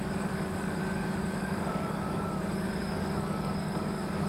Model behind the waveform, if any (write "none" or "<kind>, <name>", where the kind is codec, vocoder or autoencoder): codec, DAC